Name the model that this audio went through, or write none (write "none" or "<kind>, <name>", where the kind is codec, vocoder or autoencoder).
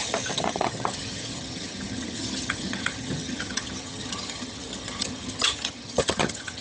vocoder, HiFi-GAN